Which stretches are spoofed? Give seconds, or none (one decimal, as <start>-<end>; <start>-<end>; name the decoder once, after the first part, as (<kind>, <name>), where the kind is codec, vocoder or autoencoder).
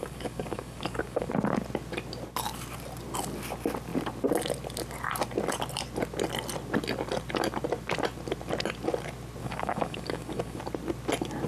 0.0-1.3 (codec, DAC); 9.4-10.6